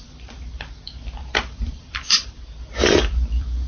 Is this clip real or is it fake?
fake